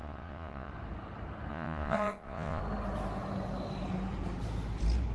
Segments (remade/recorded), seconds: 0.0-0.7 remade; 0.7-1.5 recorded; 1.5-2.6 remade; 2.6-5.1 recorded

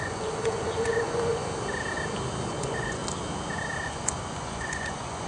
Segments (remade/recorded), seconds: 0.0-1.4 remade; 1.4-2.5 recorded; 2.5-3.0 remade; 3.0-3.8 recorded; 3.8-5.3 remade

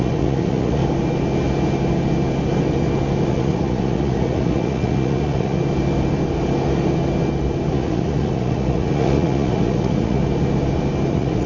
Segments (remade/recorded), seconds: 0.0-0.8 remade; 0.8-3.3 recorded; 3.3-5.6 remade; 5.6-7.7 recorded; 7.7-10.2 remade; 10.2-11.1 recorded; 11.1-11.5 remade